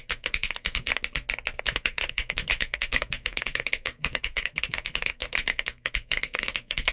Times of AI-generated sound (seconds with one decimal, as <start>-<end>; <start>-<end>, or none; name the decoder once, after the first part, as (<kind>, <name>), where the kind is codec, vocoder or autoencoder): 0.0-0.9 (codec, SNAC); 1.6-6.9

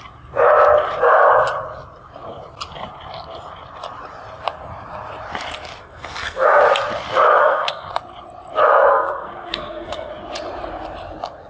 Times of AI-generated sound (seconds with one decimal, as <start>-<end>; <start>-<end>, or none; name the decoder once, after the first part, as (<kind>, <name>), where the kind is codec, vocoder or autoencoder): 5.8-6.6 (codec, SNAC); 7.4-7.9; 8.9-10.1